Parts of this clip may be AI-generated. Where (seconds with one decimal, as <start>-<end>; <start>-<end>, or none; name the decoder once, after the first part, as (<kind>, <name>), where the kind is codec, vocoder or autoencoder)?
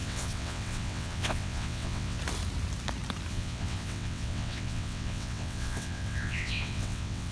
0.0-2.2 (vocoder, WaveNeXt); 3.3-7.3